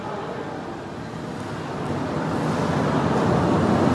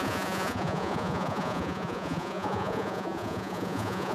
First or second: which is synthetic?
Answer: second